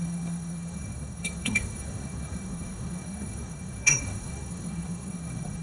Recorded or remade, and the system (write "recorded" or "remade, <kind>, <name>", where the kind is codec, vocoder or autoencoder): remade, codec, SNAC